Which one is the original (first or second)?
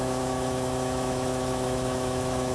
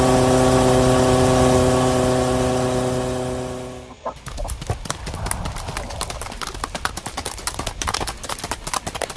second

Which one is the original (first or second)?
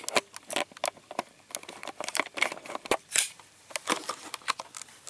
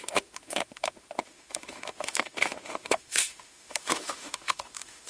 first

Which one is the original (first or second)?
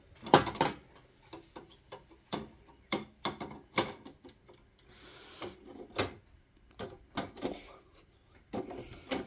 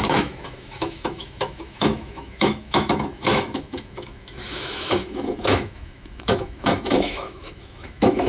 first